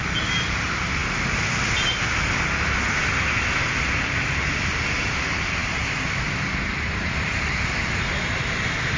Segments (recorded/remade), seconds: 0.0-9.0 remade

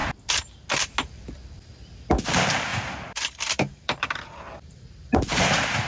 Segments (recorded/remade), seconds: 0.0-2.7 recorded; 2.7-5.9 remade

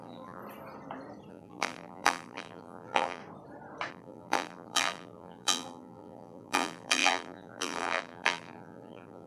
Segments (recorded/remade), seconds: 0.0-0.4 remade; 0.4-1.3 recorded; 1.3-3.2 remade; 3.2-3.9 recorded; 3.9-9.3 remade